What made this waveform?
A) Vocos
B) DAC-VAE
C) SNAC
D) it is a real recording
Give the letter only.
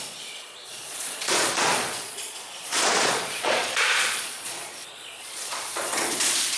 A